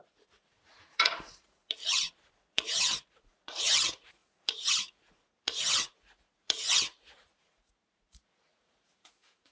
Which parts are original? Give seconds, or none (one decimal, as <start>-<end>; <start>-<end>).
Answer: 1.6-2.4